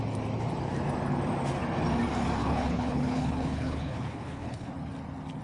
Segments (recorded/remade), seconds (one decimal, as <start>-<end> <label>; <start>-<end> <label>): 0.0-2.4 recorded; 2.4-4.7 remade; 4.7-5.4 recorded